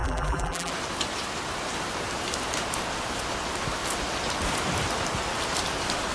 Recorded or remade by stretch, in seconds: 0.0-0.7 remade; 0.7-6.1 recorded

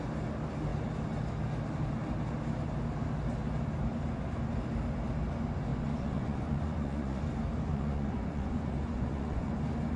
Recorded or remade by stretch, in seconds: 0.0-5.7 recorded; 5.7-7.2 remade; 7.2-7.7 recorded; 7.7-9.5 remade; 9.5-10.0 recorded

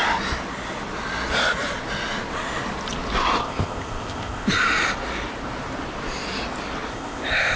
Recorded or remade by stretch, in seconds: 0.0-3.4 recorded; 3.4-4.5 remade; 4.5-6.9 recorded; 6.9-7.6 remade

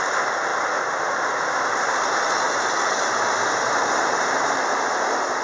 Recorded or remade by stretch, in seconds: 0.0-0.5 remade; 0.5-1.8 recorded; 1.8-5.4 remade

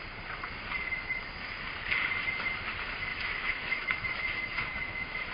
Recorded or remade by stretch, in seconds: 0.0-3.1 recorded; 3.1-5.3 remade

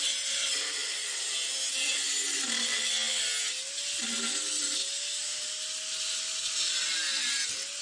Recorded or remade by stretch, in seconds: 0.0-7.8 recorded